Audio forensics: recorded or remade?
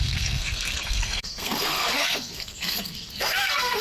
remade